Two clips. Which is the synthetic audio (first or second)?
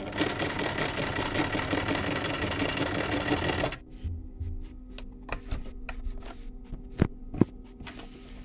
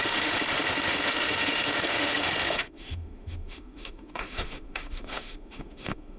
second